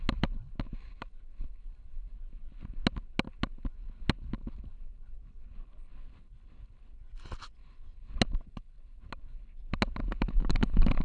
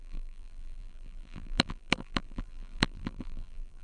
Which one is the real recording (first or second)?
first